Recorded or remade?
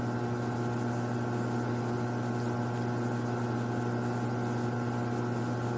recorded